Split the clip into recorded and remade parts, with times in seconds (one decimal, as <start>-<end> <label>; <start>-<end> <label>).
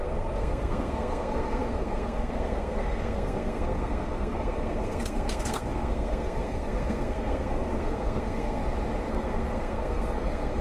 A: 0.0-8.6 remade; 8.6-9.1 recorded; 9.1-10.6 remade